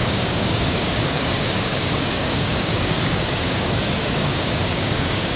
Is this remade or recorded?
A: remade